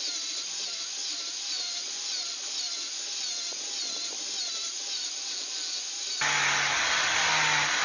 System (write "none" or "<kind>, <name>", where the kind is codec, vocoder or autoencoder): none